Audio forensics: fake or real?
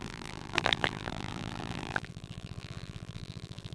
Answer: fake